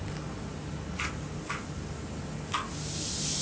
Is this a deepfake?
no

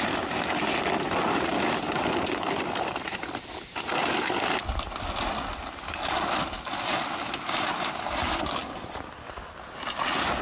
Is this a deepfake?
no